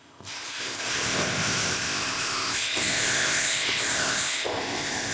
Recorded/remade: remade